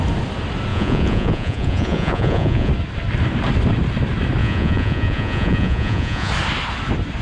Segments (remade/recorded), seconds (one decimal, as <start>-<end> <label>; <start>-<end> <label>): 0.0-0.7 recorded; 0.7-2.7 remade; 2.7-4.4 recorded; 4.4-6.3 remade; 6.3-7.2 recorded